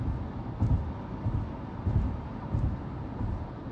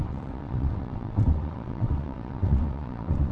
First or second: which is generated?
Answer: second